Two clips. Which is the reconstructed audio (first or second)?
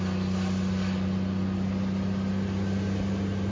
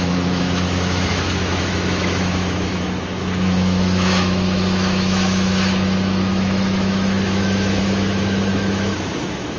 second